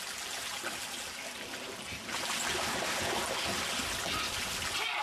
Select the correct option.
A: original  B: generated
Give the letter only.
A